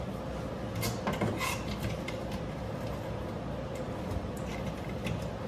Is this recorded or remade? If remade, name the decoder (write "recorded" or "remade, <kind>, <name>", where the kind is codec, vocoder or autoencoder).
recorded